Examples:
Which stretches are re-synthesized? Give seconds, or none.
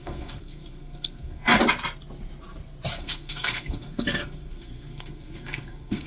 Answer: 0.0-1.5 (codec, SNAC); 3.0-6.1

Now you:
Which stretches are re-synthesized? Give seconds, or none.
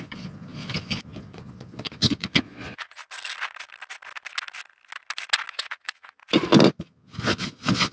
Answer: 0.0-3.0 (vocoder, Vocos); 5.5-6.2; 6.8-7.9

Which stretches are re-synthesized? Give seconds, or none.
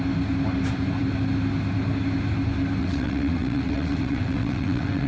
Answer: 2.8-5.1 (vocoder, WaveNeXt)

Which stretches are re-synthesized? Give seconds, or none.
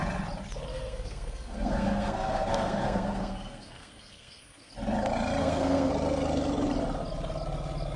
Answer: 0.7-4.7 (codec, SNAC); 5.4-5.9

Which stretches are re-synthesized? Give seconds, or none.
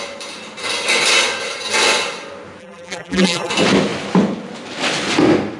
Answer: 2.6-3.5 (vocoder, BigVGAN v2)